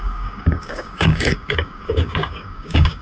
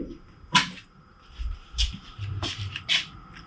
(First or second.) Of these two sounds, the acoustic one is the second